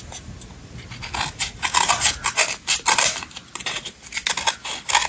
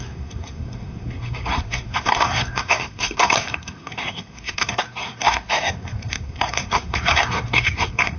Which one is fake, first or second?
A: second